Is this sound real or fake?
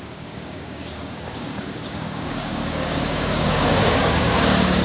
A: fake